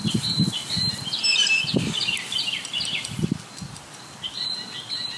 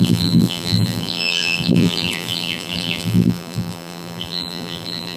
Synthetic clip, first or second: second